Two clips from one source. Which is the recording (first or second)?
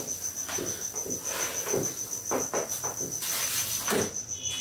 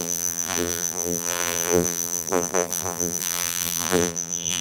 first